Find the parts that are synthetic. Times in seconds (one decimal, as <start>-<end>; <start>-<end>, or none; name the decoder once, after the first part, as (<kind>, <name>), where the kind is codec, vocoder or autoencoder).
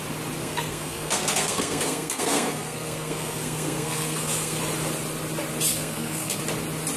0.4-4.6 (codec, SNAC); 5.7-6.4